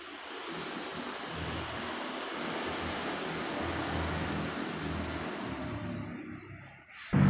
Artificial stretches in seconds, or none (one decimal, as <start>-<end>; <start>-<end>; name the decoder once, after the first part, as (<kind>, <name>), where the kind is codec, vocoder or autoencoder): none